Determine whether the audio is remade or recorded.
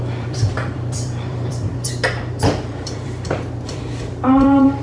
remade